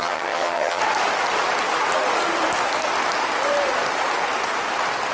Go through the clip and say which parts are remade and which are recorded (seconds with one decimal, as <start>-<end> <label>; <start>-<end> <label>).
0.0-0.8 remade; 0.8-5.1 recorded

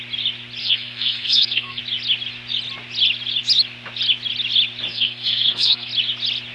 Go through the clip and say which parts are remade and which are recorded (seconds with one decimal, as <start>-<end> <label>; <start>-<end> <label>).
0.0-0.6 recorded; 0.6-1.8 remade; 1.8-4.9 recorded; 4.9-5.9 remade; 5.9-6.5 recorded

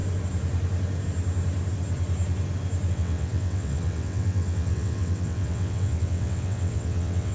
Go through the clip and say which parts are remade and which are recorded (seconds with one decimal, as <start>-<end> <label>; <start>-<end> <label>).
0.0-2.9 recorded; 2.9-7.3 remade

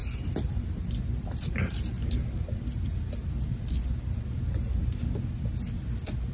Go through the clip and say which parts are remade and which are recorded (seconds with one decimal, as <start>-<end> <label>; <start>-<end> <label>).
0.0-6.3 recorded

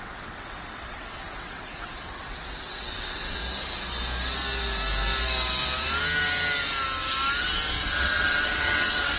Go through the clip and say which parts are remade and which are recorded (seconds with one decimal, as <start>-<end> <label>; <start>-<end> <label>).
0.0-3.4 remade; 3.4-7.4 recorded; 7.4-9.2 remade

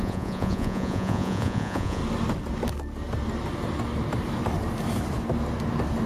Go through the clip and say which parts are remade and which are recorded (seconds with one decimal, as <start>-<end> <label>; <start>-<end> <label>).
0.0-2.0 remade; 2.0-6.1 recorded

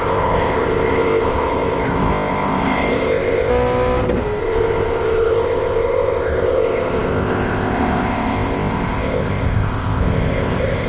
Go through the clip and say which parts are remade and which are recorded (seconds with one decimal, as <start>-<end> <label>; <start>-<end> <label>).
0.0-3.5 remade; 3.5-4.4 recorded; 4.4-10.9 remade